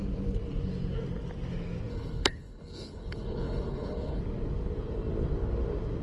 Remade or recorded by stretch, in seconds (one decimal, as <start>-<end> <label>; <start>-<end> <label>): 0.0-1.9 recorded; 1.9-4.2 remade; 4.2-6.0 recorded